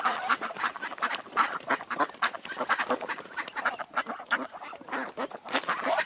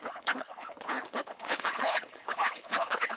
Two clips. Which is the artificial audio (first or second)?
second